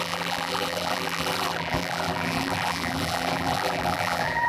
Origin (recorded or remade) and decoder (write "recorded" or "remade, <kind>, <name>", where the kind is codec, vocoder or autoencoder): remade, vocoder, BigVGAN v2